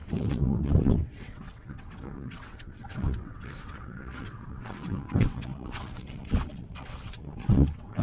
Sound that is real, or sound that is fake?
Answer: fake